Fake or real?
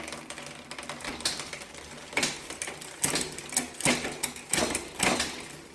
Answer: real